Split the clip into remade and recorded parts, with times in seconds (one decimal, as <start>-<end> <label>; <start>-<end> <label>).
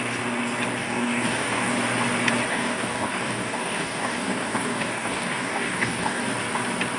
0.0-0.8 recorded; 0.8-1.7 remade; 1.7-2.5 recorded; 2.5-6.2 remade; 6.2-7.0 recorded